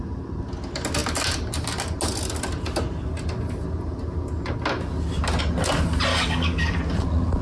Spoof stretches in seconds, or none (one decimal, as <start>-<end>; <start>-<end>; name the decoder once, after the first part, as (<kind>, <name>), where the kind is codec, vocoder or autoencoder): 6.1-6.8 (codec, DAC)